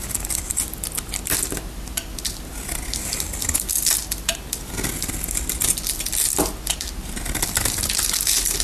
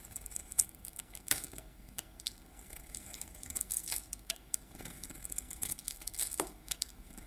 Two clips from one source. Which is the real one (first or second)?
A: first